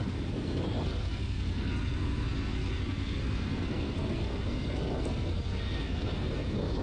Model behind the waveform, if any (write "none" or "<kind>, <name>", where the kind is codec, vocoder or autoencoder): codec, SNAC